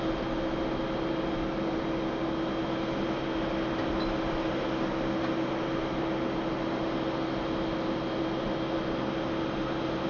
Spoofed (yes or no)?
no